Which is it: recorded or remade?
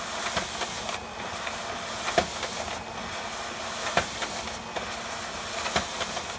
recorded